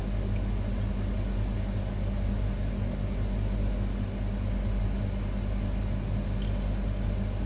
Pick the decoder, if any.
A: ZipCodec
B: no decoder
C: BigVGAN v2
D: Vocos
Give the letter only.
B